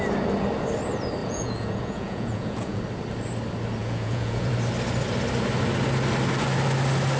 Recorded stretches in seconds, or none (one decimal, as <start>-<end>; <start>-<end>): 0.0-1.2; 2.8-3.8; 4.5-7.2